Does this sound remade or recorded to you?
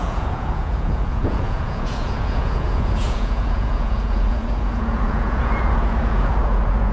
remade